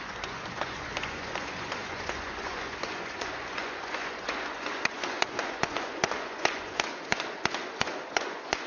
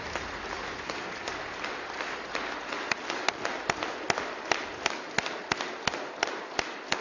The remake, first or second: first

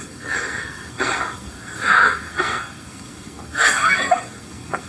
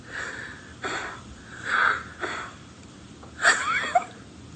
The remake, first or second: first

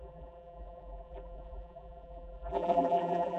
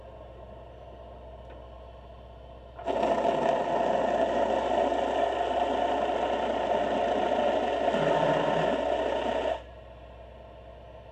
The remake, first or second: first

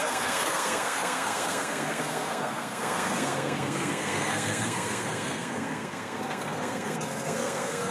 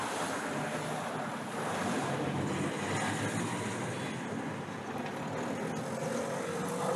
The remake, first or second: first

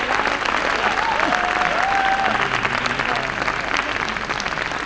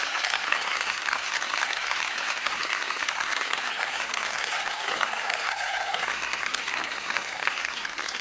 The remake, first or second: second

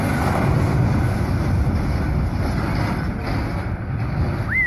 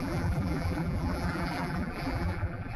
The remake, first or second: second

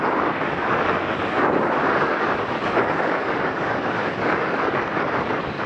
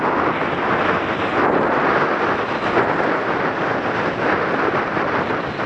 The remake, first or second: first